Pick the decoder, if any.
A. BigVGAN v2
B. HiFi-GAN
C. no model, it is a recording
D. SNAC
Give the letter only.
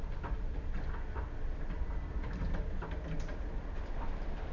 C